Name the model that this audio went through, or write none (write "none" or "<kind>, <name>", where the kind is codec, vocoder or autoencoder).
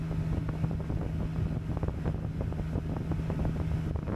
none